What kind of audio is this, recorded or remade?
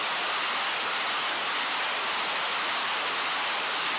recorded